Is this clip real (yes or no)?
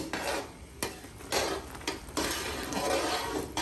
yes